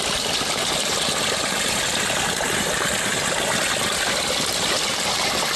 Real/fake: real